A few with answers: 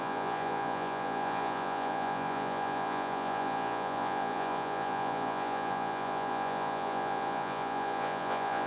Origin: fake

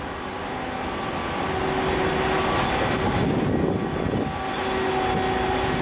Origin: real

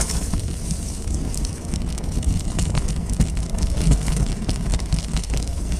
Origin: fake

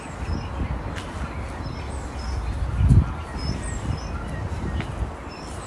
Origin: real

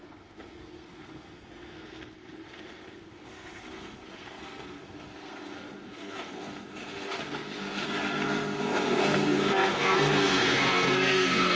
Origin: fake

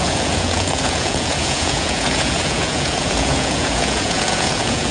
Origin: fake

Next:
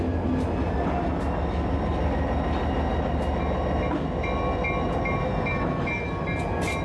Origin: real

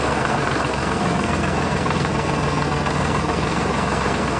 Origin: fake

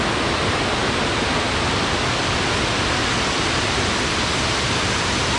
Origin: real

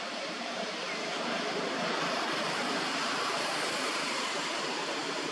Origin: fake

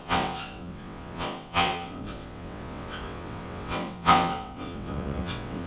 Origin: fake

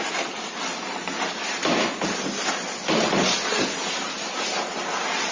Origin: real